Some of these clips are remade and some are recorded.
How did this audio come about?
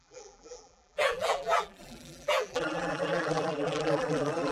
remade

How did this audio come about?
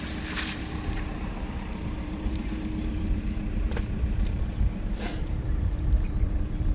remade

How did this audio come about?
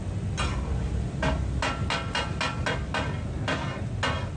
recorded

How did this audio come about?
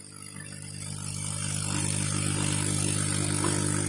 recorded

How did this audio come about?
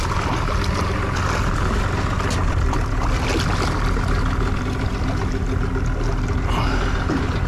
recorded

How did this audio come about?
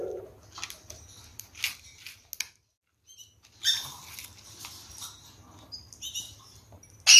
recorded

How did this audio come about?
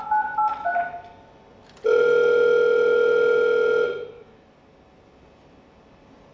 recorded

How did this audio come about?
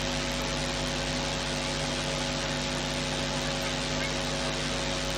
recorded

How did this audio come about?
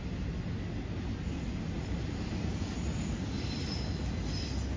recorded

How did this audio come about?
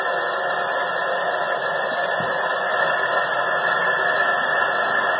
recorded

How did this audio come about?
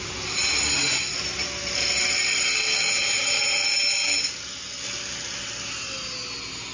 recorded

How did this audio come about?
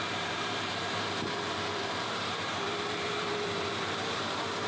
remade